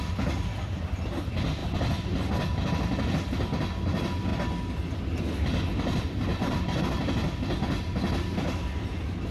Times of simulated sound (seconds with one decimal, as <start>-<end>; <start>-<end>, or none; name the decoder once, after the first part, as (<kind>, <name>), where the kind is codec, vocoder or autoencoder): 1.6-2.2 (vocoder, BigVGAN v2); 6.3-6.8